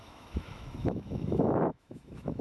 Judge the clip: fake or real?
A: fake